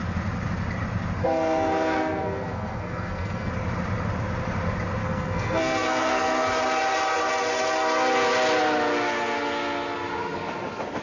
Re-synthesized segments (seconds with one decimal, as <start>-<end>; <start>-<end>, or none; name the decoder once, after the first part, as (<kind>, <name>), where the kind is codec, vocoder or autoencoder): 1.2-3.5 (codec, SNAC); 5.0-6.6